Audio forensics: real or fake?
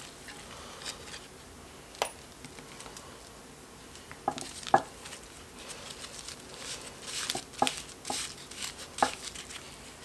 real